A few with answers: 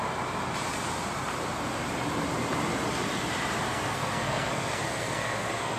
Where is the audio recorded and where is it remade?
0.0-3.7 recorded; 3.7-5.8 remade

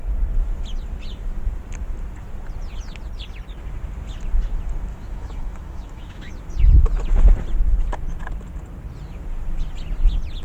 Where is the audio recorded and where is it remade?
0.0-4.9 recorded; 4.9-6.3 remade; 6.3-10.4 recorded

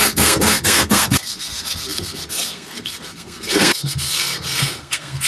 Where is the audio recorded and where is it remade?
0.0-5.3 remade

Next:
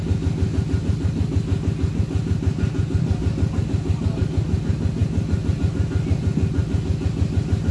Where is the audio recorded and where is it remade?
0.0-7.7 recorded

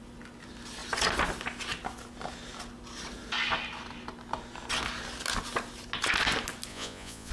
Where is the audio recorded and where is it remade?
0.0-6.7 recorded; 6.7-7.3 remade

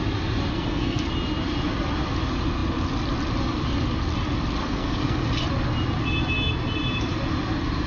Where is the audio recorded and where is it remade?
0.0-0.5 recorded; 0.5-1.1 remade; 1.1-4.6 recorded; 4.6-5.3 remade; 5.3-7.9 recorded

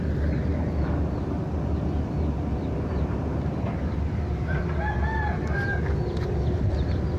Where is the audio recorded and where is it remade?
0.0-7.2 recorded

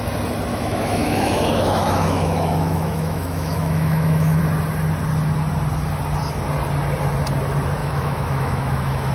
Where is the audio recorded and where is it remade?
0.0-0.5 recorded; 0.5-4.4 remade; 4.4-7.8 recorded; 7.8-9.1 remade